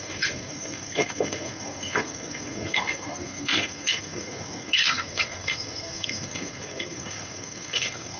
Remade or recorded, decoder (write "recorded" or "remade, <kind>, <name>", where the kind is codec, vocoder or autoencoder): remade, codec, SNAC